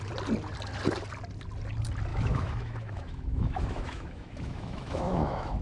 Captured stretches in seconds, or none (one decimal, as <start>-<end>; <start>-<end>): 0.0-2.1